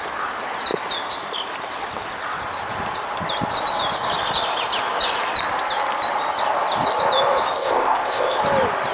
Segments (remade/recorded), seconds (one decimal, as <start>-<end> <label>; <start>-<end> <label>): 0.0-7.5 recorded; 7.5-8.4 remade; 8.4-8.9 recorded